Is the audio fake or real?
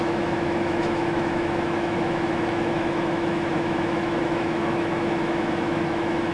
fake